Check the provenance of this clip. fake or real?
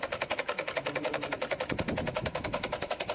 real